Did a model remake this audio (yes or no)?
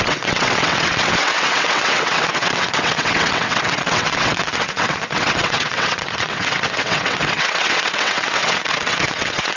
yes